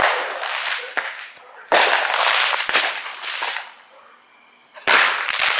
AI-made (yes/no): no